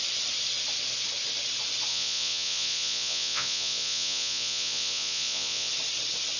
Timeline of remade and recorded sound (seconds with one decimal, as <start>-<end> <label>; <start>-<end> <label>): 0.0-1.9 recorded; 1.9-5.7 remade; 5.7-6.4 recorded